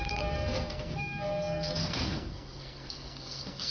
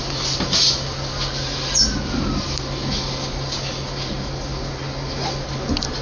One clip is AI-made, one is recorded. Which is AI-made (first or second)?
first